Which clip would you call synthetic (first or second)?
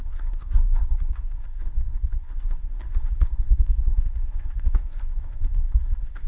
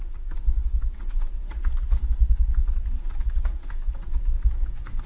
first